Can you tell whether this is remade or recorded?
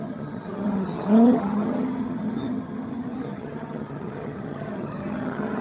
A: remade